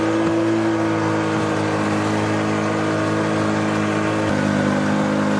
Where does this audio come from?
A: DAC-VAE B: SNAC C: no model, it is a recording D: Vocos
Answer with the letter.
C